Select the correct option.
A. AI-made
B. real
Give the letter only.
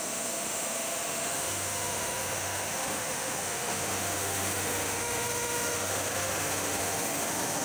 A